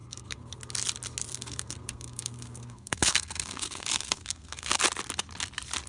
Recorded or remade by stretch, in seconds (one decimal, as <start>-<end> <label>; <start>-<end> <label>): 0.0-0.6 remade; 0.6-1.3 recorded; 1.3-4.8 remade; 4.8-5.9 recorded